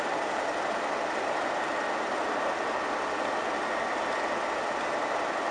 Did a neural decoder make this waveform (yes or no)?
no